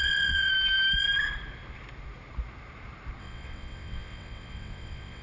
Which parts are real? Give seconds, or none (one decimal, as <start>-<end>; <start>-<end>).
0.5-3.2